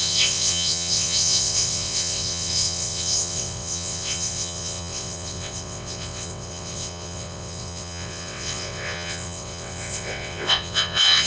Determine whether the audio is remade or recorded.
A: remade